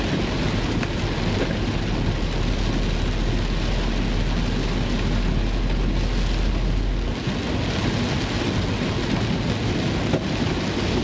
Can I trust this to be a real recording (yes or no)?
yes